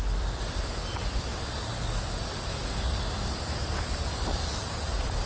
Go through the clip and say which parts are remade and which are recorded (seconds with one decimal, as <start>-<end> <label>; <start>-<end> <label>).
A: 0.0-1.3 remade; 1.3-4.3 recorded; 4.3-5.3 remade